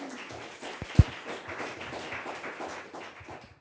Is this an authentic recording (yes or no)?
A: yes